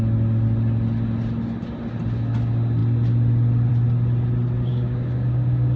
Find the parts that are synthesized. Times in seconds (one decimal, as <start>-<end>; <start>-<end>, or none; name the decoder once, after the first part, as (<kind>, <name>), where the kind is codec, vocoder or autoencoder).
4.7-5.8 (codec, DAC)